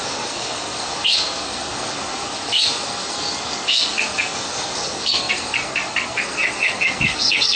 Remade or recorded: remade